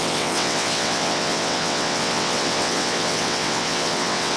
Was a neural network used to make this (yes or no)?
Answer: yes